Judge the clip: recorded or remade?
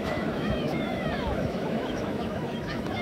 remade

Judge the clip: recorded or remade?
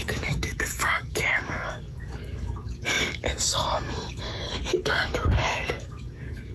remade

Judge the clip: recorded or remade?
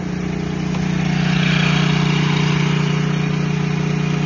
recorded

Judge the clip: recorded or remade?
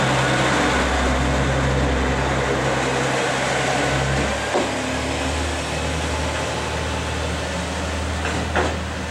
recorded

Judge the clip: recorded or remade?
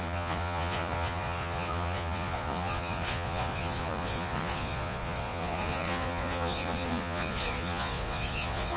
remade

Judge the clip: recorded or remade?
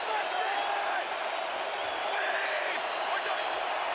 recorded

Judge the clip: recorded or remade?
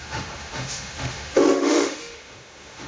remade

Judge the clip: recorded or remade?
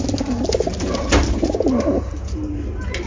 recorded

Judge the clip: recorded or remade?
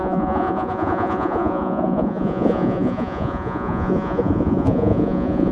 remade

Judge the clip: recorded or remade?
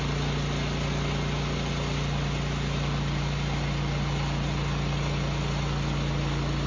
recorded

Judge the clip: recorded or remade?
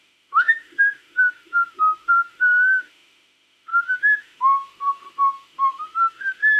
remade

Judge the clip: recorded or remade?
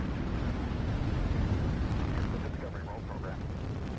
recorded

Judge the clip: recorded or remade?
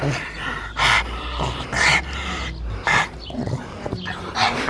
recorded